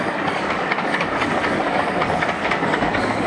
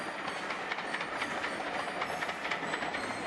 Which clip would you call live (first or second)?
second